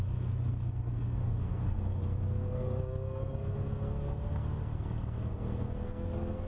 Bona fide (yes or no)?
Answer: no